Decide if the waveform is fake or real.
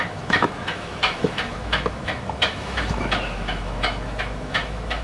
fake